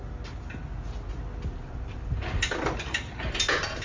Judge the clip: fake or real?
real